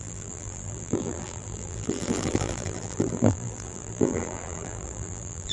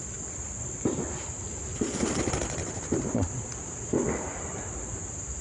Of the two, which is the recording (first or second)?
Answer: second